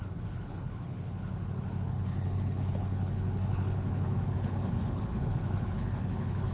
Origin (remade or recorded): remade